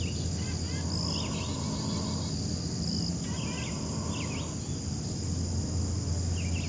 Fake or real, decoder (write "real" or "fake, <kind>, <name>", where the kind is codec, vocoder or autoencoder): real